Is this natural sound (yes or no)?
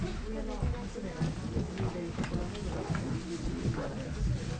yes